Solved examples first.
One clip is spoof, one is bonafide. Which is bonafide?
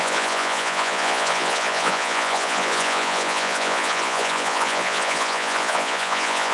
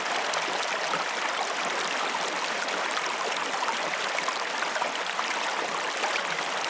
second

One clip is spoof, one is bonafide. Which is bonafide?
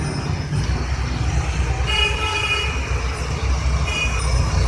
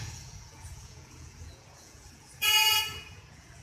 first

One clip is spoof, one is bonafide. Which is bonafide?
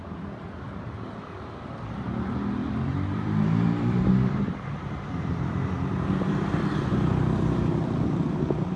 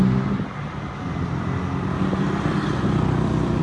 second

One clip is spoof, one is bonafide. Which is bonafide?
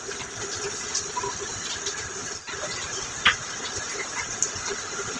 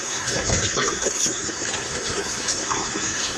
first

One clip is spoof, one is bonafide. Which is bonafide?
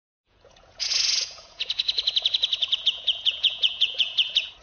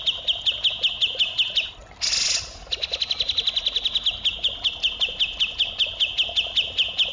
second